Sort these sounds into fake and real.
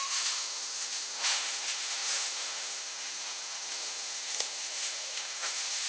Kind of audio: fake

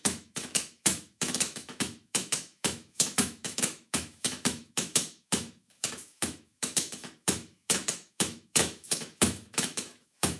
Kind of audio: fake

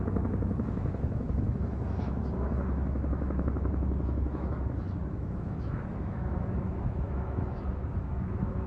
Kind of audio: fake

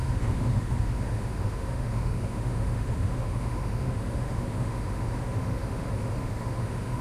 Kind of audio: fake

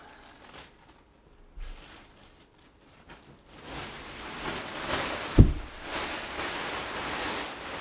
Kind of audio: real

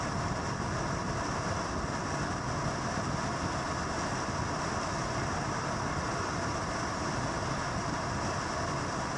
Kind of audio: real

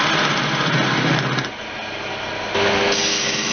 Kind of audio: real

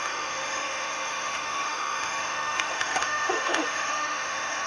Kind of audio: fake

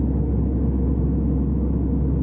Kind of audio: real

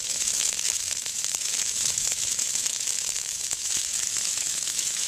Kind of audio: fake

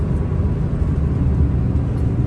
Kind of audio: real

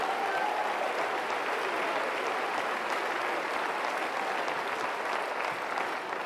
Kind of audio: real